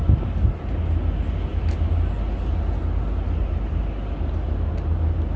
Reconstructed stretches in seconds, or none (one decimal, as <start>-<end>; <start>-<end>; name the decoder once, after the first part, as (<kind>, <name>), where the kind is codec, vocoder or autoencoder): none